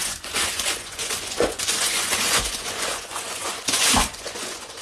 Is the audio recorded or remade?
remade